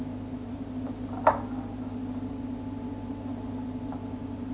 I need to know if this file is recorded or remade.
recorded